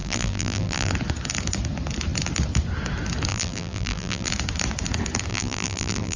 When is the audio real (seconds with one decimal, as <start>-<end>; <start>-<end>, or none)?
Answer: 0.9-3.3; 4.3-5.3